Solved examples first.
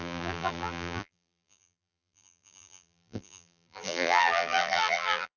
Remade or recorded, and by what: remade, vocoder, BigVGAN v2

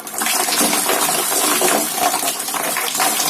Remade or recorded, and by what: remade, vocoder, BigVGAN v2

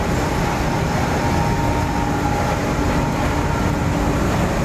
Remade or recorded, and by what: recorded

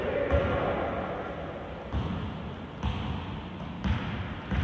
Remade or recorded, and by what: recorded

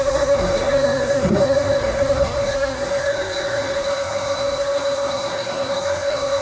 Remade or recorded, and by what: remade, codec, SNAC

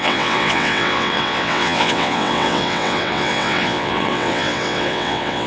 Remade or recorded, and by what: remade, vocoder, WaveNeXt